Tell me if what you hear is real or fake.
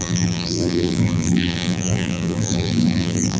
fake